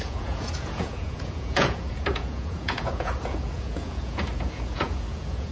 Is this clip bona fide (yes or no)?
no